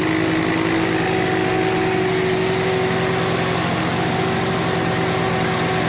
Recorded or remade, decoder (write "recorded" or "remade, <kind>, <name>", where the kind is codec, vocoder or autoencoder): recorded